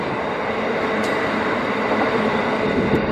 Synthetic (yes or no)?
no